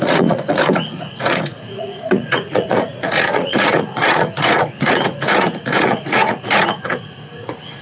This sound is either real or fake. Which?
fake